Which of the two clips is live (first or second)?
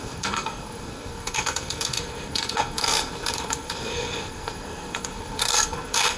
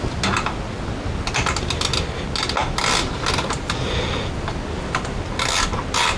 second